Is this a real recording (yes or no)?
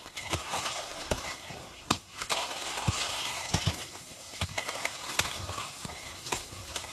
no